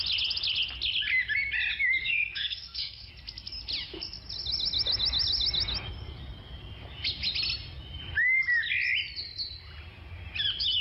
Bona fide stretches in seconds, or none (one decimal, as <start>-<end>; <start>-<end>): 0.0-2.0; 3.1-10.8